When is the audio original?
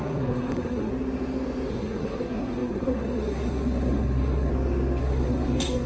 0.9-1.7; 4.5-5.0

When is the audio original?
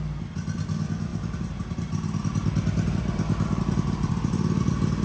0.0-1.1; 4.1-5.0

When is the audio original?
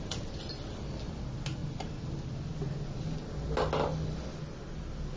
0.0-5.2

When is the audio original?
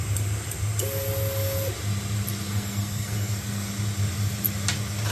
0.0-2.5; 3.7-5.1